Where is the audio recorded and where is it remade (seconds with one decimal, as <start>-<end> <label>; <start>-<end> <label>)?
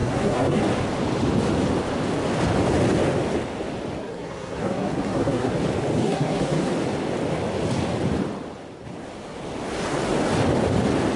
0.0-0.6 remade; 0.6-4.0 recorded; 4.0-5.5 remade; 5.5-6.0 recorded; 6.0-6.7 remade; 6.7-11.2 recorded